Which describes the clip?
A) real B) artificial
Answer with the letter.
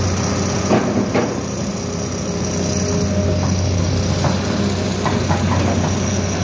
A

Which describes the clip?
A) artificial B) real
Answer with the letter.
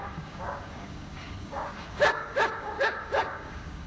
A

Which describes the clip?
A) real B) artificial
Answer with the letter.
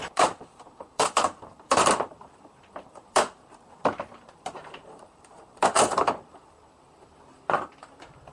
B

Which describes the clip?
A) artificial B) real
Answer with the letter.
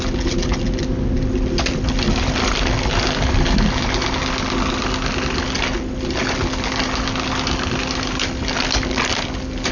B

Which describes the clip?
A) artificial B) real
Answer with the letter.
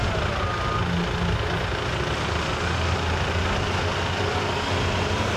B